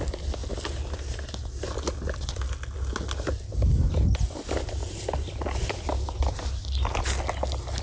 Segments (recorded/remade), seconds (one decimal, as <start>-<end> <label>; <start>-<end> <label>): 0.0-4.8 recorded; 4.8-5.8 remade; 5.8-7.8 recorded